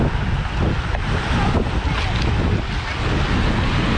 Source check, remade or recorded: recorded